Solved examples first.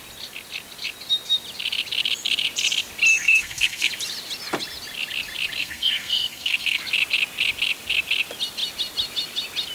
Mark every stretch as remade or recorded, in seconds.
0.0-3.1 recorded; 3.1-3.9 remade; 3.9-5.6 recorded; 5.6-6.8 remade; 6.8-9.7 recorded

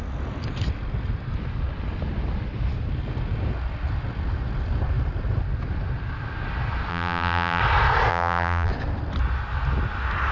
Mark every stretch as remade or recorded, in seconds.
0.0-6.9 recorded; 6.9-7.6 remade; 7.6-8.1 recorded; 8.1-8.7 remade; 8.7-10.3 recorded

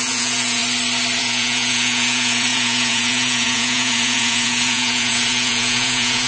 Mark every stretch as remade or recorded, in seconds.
0.0-0.6 remade; 0.6-1.2 recorded; 1.2-6.3 remade

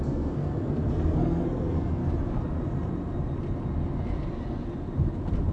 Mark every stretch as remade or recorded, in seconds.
0.0-2.0 remade; 2.0-5.5 recorded

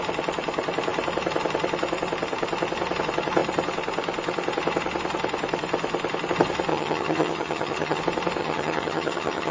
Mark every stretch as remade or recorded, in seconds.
0.0-6.7 recorded; 6.7-8.0 remade; 8.0-8.4 recorded; 8.4-9.5 remade

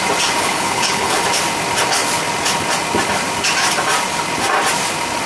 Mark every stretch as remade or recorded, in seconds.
0.0-0.4 recorded; 0.4-1.2 remade; 1.2-5.3 recorded

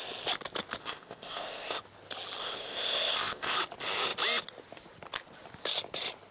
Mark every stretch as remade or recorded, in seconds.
0.0-0.8 recorded; 0.8-1.8 remade; 1.8-2.4 recorded; 2.4-3.6 remade; 3.6-6.3 recorded

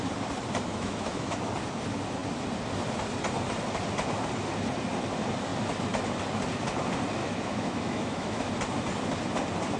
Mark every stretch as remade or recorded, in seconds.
0.0-0.7 recorded; 0.7-1.5 remade; 1.5-7.2 recorded; 7.2-8.5 remade; 8.5-9.8 recorded